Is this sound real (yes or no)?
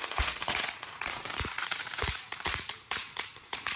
no